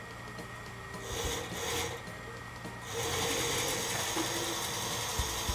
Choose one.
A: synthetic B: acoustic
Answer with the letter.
B